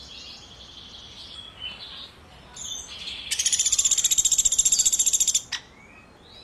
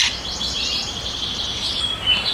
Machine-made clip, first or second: second